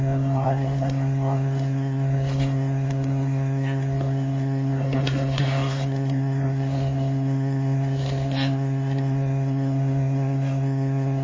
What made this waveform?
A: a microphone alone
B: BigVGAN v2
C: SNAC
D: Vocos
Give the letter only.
C